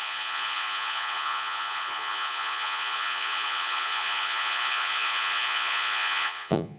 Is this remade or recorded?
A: remade